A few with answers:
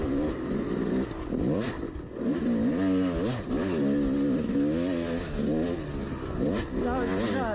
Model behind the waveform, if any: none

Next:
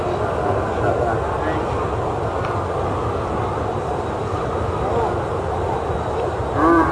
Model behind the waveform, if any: none